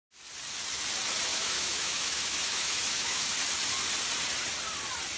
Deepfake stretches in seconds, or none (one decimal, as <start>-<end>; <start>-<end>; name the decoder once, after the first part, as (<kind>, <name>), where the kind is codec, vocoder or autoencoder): 1.3-3.3 (autoencoder, DAC-VAE)